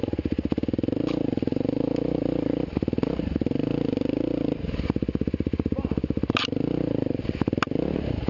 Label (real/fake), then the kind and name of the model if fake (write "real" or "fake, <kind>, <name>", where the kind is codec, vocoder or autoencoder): real